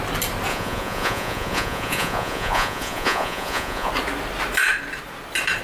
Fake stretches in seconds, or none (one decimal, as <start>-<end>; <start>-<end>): 0.5-3.9